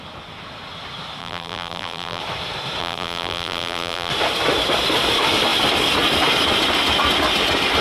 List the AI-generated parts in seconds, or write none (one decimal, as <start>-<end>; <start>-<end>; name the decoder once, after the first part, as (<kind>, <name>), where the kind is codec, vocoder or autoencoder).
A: 1.2-2.2 (vocoder, BigVGAN v2); 2.8-4.1